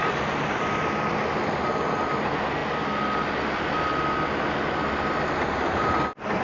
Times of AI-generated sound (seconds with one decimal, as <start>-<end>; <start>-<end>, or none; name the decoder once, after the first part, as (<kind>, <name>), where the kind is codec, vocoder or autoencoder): none